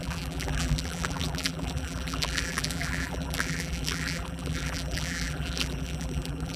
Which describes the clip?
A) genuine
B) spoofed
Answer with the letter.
B